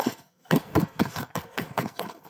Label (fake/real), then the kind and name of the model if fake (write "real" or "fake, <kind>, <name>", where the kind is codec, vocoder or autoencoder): fake, codec, SNAC